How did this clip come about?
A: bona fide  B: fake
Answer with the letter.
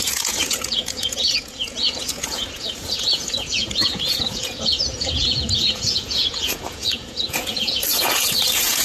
B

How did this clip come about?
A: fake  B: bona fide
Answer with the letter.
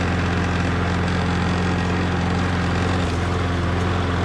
B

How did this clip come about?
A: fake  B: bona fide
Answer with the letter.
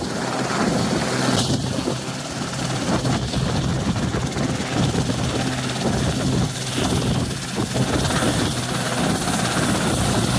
B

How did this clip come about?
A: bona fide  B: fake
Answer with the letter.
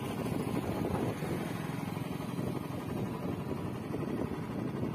A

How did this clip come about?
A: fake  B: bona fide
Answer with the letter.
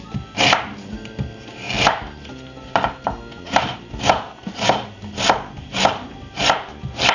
B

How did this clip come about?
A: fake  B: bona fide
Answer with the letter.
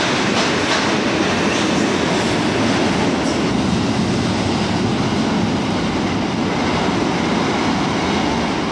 B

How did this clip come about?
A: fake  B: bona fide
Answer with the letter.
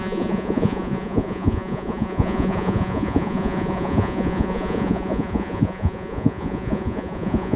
A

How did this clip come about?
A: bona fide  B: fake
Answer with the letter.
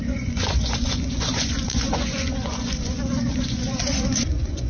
B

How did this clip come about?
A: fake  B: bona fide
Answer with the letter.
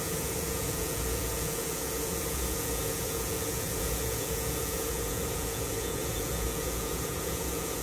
A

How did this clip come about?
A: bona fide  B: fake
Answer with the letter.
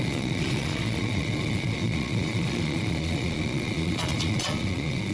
B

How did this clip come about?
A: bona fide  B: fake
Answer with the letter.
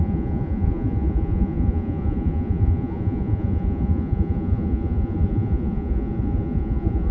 B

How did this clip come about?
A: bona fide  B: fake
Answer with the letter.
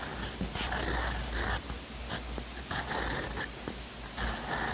A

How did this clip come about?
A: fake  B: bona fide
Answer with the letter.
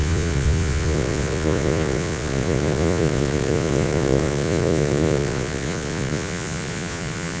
A